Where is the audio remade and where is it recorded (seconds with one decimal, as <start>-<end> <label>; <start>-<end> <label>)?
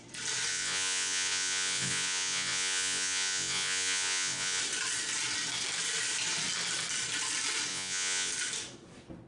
0.0-0.5 recorded; 0.5-4.6 remade; 4.6-7.7 recorded; 7.7-8.3 remade; 8.3-9.3 recorded